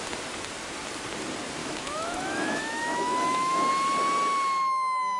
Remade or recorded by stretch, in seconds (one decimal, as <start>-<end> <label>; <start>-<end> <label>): 0.0-1.6 recorded; 1.6-3.7 remade; 3.7-5.2 recorded